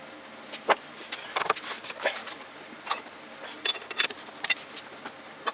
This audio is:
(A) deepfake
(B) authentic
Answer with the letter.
B